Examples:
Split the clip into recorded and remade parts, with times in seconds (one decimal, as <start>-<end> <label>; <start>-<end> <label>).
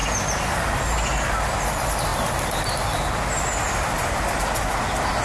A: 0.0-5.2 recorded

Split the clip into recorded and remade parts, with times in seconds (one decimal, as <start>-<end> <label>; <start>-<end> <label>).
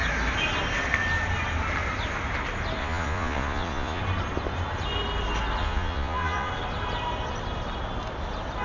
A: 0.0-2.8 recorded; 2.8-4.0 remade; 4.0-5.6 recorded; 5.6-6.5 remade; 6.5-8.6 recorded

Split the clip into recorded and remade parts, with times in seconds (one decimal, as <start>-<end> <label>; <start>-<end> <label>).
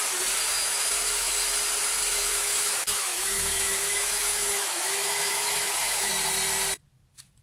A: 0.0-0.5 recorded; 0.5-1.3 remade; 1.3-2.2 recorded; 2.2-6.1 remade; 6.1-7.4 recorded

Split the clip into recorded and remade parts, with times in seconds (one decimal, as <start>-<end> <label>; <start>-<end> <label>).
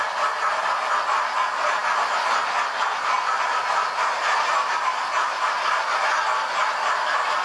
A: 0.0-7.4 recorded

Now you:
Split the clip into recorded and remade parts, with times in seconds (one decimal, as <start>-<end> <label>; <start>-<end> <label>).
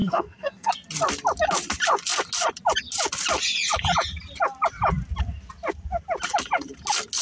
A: 0.0-0.7 remade; 0.7-7.2 recorded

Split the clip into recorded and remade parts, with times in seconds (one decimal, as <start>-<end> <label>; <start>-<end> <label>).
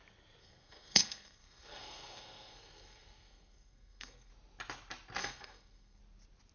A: 0.0-0.4 recorded; 0.4-4.3 remade; 4.3-5.2 recorded; 5.2-6.0 remade; 6.0-6.5 recorded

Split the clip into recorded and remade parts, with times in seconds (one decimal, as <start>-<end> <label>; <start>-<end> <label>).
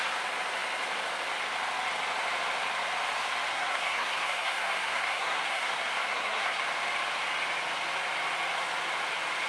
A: 0.0-3.5 recorded; 3.5-6.6 remade; 6.6-9.5 recorded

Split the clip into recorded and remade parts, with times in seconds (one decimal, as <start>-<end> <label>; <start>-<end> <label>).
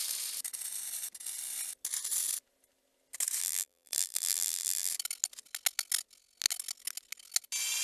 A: 0.0-3.4 recorded; 3.4-4.9 remade; 4.9-7.8 recorded